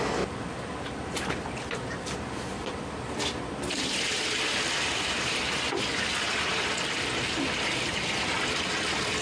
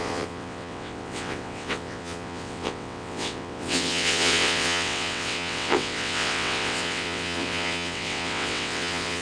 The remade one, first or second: second